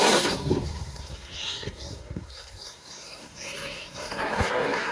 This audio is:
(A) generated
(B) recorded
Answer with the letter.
A